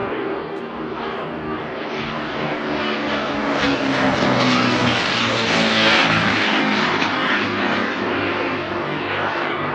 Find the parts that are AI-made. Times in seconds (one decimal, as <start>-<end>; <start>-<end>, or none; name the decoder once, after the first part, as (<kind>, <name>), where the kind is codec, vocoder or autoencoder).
0.0-9.7 (codec, DAC)